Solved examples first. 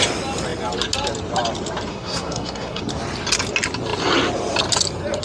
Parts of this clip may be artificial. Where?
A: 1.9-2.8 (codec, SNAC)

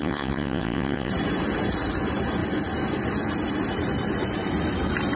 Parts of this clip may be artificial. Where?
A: 0.0-1.1 (vocoder, WaveNeXt)

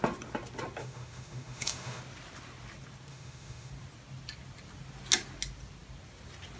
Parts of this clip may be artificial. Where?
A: 0.8-2.0 (autoencoder, DAC-VAE); 3.1-3.7

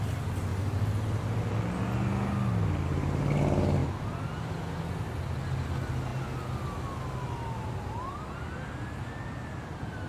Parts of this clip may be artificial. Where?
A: none

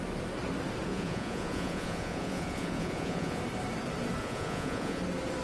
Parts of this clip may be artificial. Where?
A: 0.9-3.4 (vocoder, Vocos); 4.2-5.0